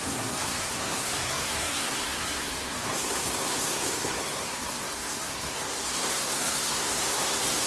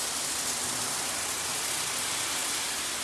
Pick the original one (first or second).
second